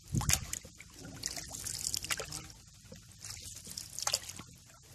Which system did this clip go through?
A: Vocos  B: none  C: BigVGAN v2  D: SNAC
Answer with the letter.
B